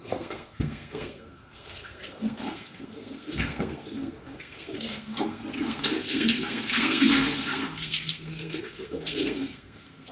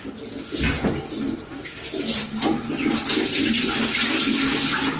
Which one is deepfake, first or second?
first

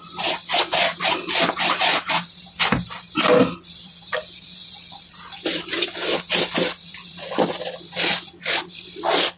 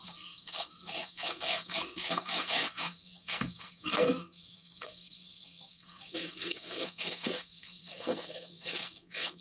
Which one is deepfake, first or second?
second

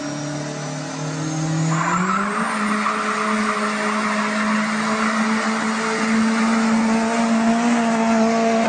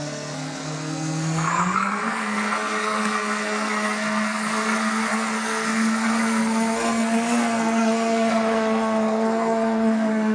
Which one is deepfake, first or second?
second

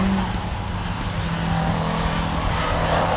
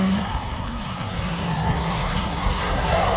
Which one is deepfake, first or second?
second